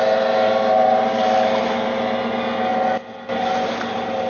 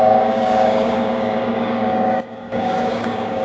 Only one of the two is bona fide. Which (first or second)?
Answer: first